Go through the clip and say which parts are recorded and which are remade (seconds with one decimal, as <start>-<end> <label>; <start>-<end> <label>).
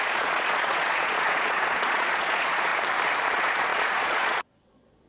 0.0-2.7 remade; 2.7-3.2 recorded; 3.2-5.1 remade